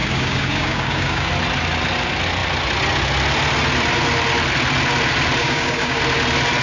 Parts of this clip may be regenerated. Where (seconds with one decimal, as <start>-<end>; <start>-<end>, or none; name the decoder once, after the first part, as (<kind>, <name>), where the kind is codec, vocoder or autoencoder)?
0.0-1.3 (codec, DAC); 5.4-6.0